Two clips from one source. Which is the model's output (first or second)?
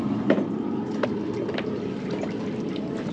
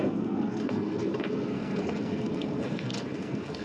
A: second